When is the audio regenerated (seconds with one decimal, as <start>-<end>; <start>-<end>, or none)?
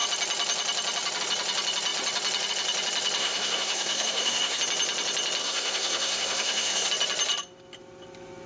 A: 3.2-4.6; 5.4-6.9